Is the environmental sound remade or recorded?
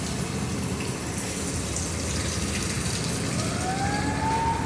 recorded